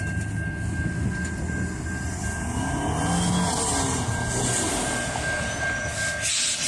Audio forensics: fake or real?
real